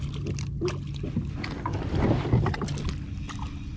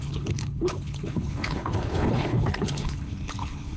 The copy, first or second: second